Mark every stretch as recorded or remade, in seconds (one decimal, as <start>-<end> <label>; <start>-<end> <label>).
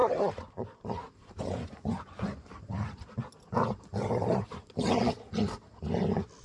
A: 0.0-1.4 recorded; 1.4-2.5 remade; 2.5-6.4 recorded